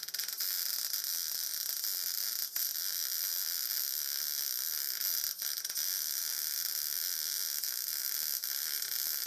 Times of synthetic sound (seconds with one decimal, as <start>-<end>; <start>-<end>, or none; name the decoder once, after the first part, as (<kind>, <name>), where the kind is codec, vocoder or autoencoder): none

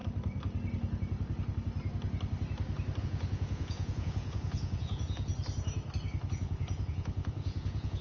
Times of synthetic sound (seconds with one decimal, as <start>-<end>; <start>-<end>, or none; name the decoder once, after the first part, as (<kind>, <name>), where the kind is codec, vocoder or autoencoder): 3.0-5.3 (vocoder, Vocos); 6.3-8.0

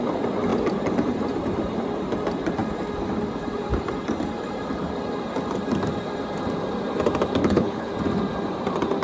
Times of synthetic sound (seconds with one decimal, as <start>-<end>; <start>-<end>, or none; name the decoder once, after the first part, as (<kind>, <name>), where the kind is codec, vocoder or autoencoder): 7.4-7.9 (codec, HILCodec)

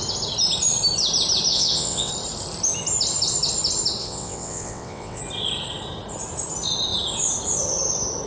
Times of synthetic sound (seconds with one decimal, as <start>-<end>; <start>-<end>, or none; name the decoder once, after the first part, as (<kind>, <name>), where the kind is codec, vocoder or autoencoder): 1.5-2.1 (vocoder, WaveNeXt); 4.0-5.2

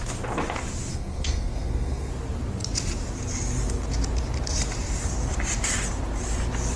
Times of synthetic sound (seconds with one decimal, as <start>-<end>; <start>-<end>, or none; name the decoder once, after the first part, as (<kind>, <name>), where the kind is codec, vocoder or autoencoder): 0.9-2.1 (codec, SNAC)

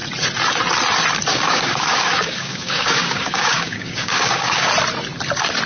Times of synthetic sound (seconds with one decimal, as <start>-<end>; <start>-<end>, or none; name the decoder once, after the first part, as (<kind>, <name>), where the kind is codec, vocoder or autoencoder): 1.3-4.7 (codec, DAC)